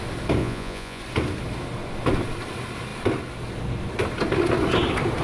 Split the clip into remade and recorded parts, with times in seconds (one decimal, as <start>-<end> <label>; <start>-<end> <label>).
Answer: 0.0-0.4 recorded; 0.4-1.0 remade; 1.0-5.2 recorded